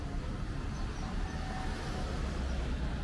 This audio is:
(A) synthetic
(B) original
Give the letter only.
B